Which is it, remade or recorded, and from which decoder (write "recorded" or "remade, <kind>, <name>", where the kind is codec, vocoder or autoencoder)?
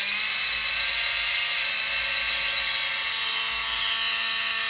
recorded